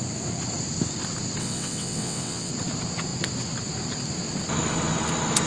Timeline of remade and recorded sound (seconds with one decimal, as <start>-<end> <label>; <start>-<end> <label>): 0.0-1.4 recorded; 1.4-2.5 remade; 2.5-5.5 recorded